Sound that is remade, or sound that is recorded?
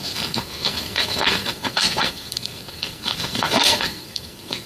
remade